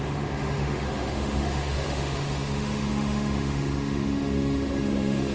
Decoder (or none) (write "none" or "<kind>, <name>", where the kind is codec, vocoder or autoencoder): autoencoder, DAC-VAE